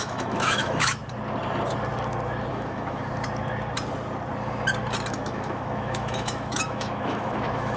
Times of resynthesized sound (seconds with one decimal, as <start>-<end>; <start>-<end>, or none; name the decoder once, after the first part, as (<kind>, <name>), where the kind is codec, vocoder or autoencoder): 0.0-1.0 (autoencoder, DAC-VAE); 2.5-3.0; 5.1-7.8